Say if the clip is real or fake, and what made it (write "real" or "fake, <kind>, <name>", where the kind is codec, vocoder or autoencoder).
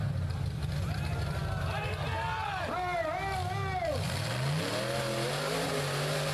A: real